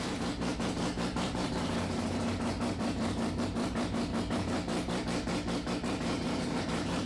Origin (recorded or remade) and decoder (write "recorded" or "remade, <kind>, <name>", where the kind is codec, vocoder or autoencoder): remade, vocoder, BigVGAN v2